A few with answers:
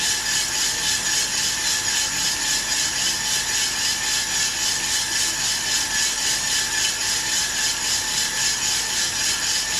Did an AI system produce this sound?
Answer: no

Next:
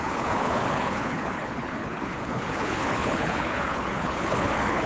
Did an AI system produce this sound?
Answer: yes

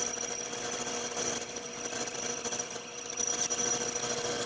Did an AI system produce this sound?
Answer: no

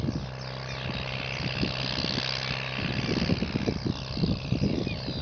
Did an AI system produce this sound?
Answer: no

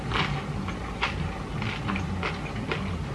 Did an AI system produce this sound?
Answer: no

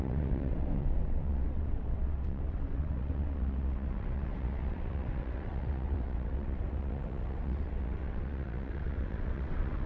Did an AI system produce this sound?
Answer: yes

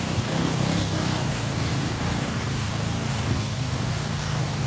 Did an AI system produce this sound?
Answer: yes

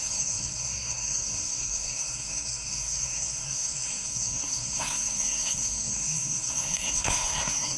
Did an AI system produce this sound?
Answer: yes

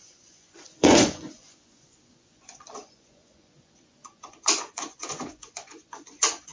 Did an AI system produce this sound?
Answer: yes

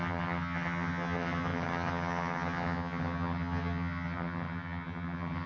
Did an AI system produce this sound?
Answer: yes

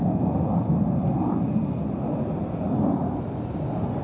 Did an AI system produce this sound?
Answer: no